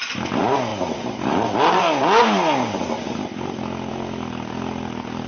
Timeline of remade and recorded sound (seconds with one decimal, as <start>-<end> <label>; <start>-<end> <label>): 0.0-5.3 recorded